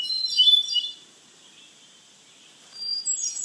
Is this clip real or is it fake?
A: fake